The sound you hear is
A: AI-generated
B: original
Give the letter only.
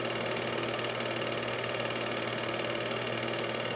B